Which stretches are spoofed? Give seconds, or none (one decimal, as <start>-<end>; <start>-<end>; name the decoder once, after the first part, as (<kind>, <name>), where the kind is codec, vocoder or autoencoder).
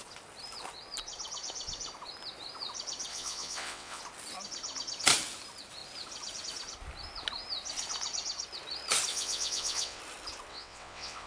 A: 3.1-4.0 (vocoder, WaveNeXt); 9.1-10.0; 10.5-11.3